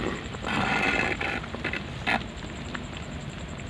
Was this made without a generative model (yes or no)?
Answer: no